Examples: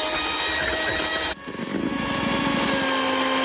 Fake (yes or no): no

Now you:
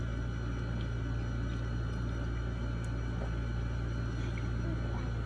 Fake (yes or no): no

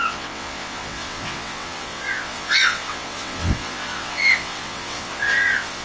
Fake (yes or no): yes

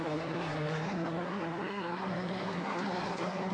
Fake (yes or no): yes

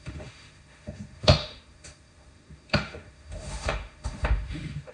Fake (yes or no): yes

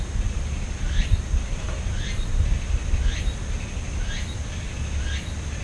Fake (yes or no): no